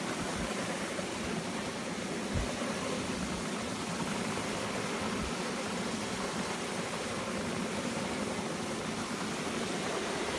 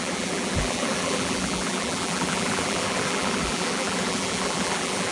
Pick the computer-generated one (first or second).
second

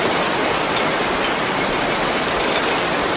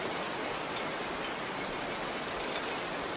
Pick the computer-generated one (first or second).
first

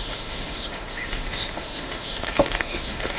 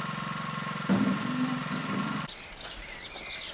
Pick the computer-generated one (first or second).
first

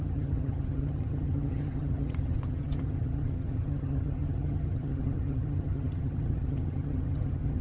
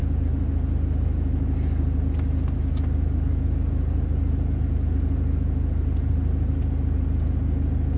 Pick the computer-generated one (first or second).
first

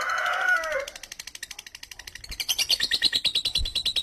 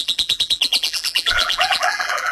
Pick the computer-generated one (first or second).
second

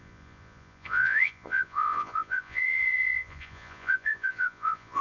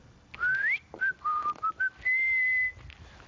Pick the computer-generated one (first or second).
first